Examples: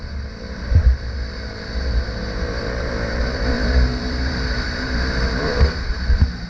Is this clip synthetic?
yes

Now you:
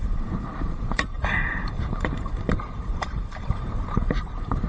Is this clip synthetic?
yes